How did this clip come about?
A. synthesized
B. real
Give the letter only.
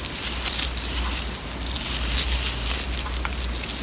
B